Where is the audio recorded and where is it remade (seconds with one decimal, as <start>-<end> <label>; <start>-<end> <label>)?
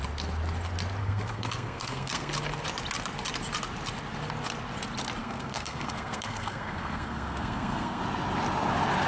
0.0-1.0 recorded; 1.0-2.3 remade; 2.3-5.2 recorded; 5.2-8.0 remade; 8.0-9.1 recorded